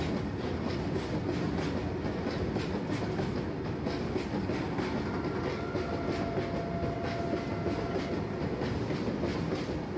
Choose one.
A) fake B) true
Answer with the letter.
B